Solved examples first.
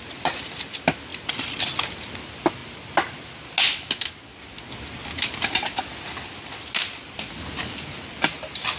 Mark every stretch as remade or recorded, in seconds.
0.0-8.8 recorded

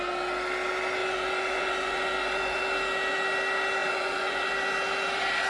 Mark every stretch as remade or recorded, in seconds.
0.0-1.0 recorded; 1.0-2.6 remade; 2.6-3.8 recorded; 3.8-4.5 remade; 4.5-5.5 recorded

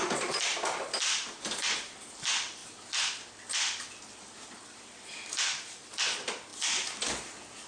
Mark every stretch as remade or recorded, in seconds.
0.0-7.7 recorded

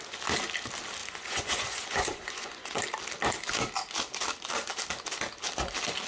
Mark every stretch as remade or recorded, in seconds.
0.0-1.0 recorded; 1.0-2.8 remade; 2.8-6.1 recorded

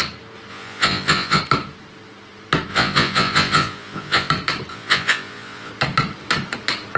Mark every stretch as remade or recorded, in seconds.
0.0-0.5 recorded; 0.5-1.4 remade; 1.4-2.7 recorded; 2.7-4.3 remade; 4.3-4.7 recorded; 4.7-5.7 remade; 5.7-7.0 recorded